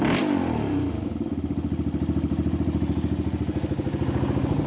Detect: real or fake real